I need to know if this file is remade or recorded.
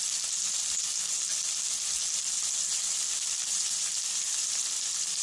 recorded